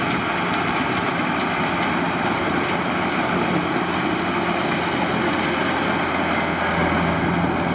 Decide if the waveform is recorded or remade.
recorded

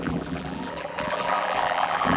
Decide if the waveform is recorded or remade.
remade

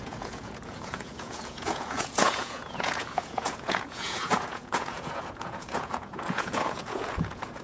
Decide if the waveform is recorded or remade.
remade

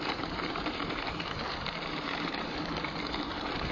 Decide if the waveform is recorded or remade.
remade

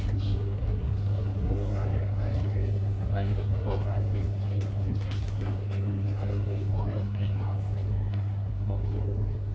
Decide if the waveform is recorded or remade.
remade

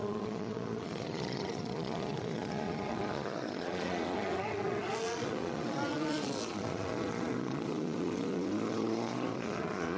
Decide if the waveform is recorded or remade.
remade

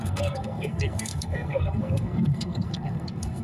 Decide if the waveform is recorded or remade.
remade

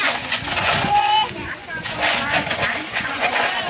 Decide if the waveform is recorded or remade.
remade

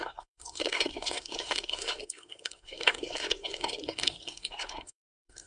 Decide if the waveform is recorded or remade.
remade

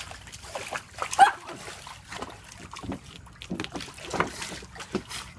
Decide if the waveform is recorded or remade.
recorded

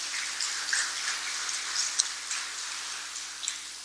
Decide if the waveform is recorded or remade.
recorded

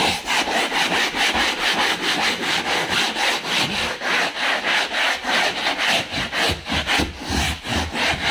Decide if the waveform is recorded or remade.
recorded